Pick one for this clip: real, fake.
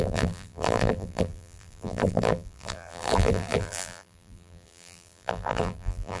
fake